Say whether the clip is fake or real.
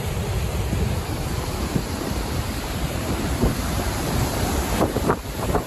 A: fake